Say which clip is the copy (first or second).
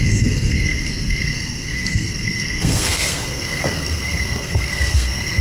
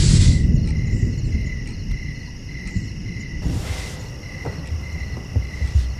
first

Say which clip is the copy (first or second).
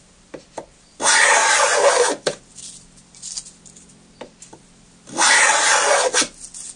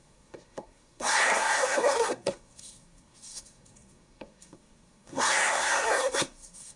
second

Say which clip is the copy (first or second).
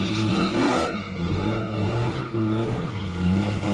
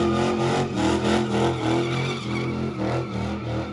first